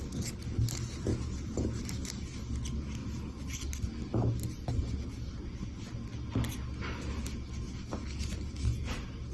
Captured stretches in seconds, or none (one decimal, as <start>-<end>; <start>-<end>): 0.0-9.3